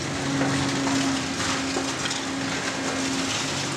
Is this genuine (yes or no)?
yes